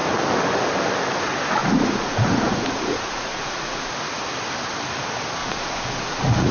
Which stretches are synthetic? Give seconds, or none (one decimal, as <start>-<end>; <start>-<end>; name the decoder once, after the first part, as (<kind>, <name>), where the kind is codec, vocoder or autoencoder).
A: 1.6-3.9 (vocoder, Vocos); 5.4-6.5